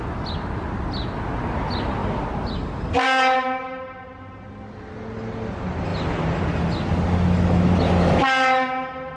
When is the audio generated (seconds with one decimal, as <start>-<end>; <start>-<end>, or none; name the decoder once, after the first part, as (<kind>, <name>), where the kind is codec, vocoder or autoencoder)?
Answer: 5.9-6.6 (vocoder, BigVGAN v2)